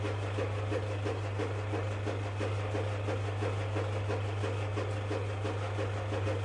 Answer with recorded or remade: recorded